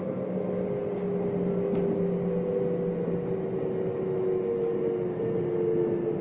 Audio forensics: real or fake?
real